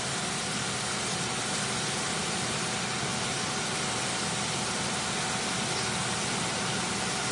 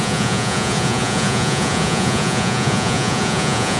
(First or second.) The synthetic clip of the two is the second